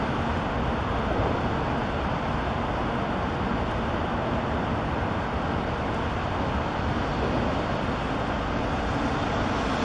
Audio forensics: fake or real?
real